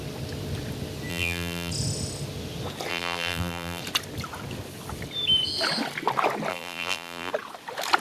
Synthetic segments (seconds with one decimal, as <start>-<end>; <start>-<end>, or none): 1.1-1.7; 2.9-3.8; 6.5-7.3